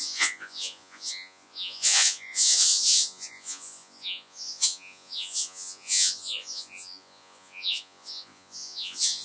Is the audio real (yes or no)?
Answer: no